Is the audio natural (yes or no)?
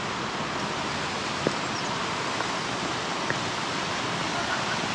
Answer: yes